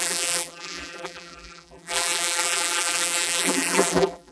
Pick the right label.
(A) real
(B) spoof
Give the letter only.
B